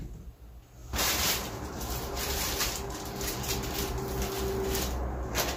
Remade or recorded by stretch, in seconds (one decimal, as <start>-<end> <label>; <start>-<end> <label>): 0.0-0.8 recorded; 0.8-3.8 remade; 3.8-5.6 recorded